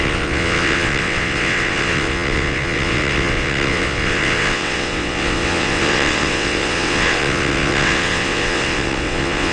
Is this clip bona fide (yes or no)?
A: no